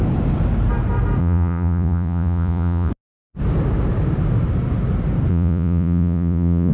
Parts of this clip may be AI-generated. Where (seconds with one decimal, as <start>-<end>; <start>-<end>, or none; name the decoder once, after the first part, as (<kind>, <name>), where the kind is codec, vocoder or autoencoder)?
1.2-2.9 (vocoder, Vocos); 5.3-6.7